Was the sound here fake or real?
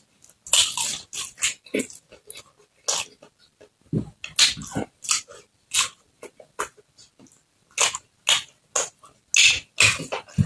real